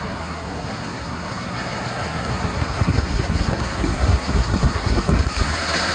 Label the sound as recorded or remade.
remade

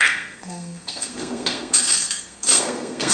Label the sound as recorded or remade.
remade